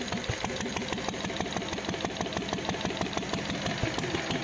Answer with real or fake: real